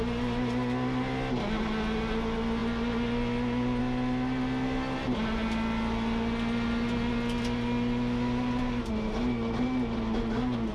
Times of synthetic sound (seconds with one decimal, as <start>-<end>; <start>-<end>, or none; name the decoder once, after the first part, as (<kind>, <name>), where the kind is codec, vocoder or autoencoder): none